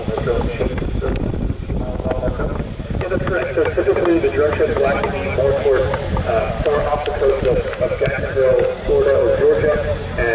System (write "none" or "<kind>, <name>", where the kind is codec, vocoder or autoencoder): none